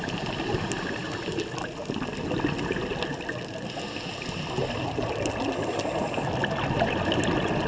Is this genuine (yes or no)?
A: yes